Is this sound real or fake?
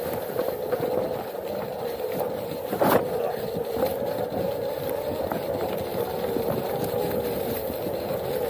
fake